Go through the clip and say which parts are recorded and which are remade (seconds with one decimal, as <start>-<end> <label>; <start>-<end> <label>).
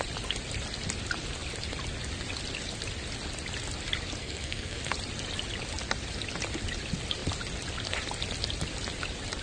0.0-4.2 recorded; 4.2-4.8 remade; 4.8-9.4 recorded